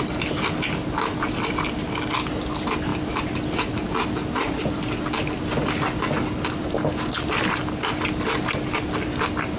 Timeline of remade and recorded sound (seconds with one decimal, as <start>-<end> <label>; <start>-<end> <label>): 0.0-9.6 recorded

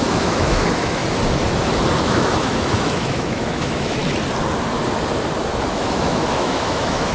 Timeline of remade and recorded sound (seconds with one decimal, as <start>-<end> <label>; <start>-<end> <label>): 0.0-1.0 remade; 1.0-2.0 recorded; 2.0-4.0 remade; 4.0-5.7 recorded; 5.7-7.1 remade

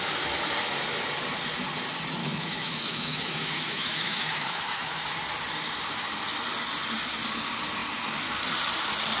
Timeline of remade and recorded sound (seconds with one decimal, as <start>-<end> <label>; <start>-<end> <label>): 0.0-2.2 recorded; 2.2-5.2 remade; 5.2-9.2 recorded

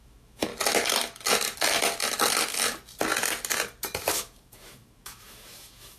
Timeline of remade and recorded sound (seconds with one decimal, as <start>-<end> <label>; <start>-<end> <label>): 0.0-0.5 remade; 0.5-4.1 recorded; 4.1-6.0 remade

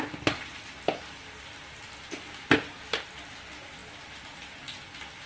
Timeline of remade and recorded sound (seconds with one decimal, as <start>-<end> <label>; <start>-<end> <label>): 0.0-5.3 recorded

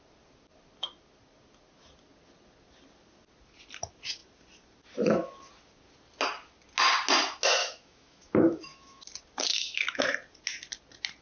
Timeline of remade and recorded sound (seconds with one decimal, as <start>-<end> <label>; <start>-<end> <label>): 0.0-7.6 recorded; 7.6-9.0 remade; 9.0-9.5 recorded; 9.5-10.0 remade; 10.0-11.2 recorded

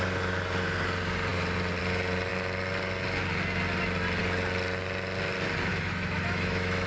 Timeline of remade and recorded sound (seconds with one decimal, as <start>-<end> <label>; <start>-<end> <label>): 0.0-5.7 recorded; 5.7-6.9 remade

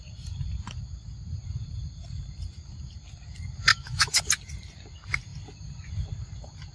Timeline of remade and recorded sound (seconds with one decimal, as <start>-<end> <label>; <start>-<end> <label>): 0.0-3.7 recorded; 3.7-4.2 remade; 4.2-6.7 recorded